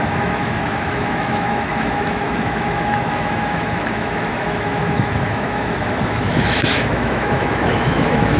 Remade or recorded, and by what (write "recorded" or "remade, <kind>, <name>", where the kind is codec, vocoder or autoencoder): remade, autoencoder, DAC-VAE